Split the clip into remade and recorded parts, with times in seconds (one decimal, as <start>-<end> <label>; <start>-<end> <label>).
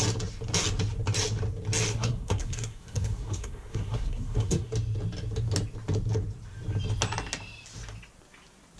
0.0-1.9 recorded; 1.9-4.7 remade; 4.7-8.8 recorded